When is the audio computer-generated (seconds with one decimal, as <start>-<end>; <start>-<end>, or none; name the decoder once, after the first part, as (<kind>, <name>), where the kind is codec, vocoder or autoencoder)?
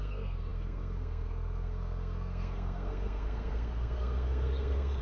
0.0-5.0 (codec, SNAC)